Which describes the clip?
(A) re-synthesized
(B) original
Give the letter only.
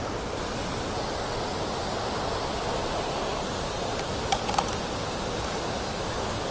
B